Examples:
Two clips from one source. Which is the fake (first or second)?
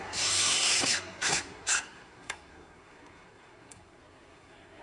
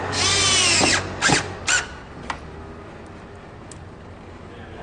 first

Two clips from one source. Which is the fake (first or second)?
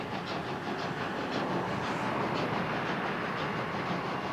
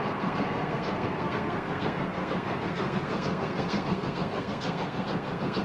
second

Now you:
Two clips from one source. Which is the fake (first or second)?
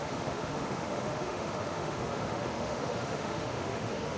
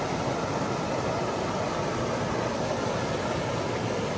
first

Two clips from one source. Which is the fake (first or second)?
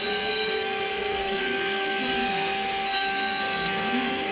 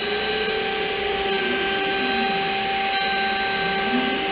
first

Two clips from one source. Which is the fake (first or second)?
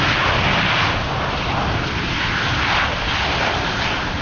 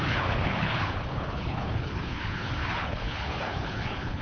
second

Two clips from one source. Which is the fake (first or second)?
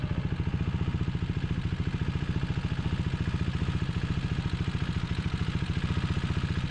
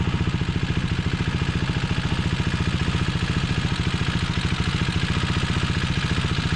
first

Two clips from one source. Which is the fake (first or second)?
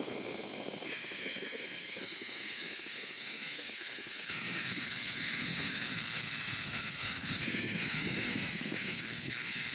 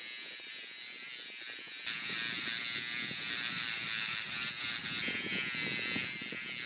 first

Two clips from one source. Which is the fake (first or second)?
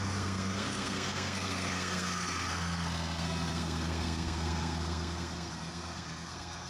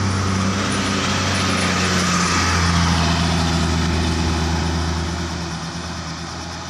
first